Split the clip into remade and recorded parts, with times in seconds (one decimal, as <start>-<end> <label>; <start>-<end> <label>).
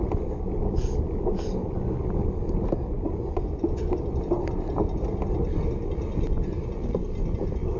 0.0-3.2 recorded; 3.2-4.0 remade; 4.0-7.8 recorded